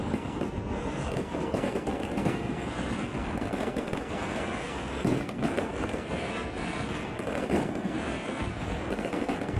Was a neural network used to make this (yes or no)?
yes